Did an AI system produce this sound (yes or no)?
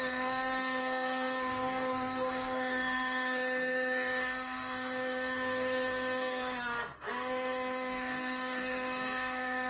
yes